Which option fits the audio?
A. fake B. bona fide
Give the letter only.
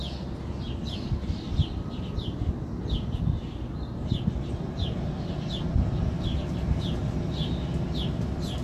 B